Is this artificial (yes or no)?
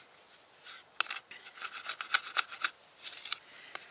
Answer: no